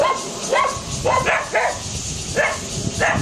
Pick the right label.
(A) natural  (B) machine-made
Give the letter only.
A